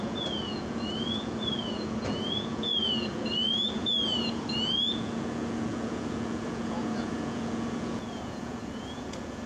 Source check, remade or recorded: remade